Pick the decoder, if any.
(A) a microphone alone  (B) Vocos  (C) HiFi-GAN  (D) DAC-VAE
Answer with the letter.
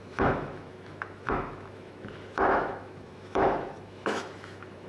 D